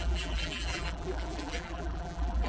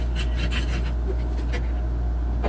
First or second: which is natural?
second